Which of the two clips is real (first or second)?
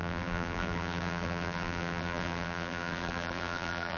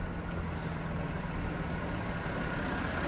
second